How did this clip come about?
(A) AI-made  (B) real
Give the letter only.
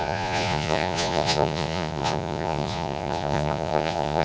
A